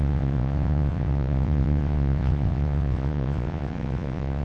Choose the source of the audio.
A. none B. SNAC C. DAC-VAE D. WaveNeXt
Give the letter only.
D